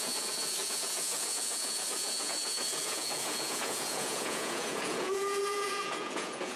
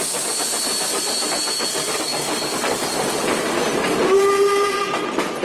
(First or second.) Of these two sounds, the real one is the second